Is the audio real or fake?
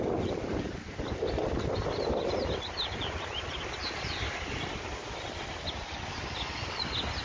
real